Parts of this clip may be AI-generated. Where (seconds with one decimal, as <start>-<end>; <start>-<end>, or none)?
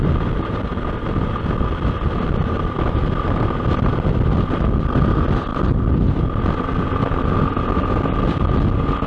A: none